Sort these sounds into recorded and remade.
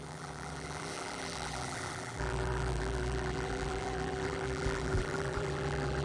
remade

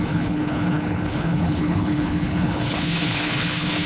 remade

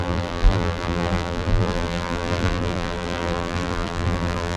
remade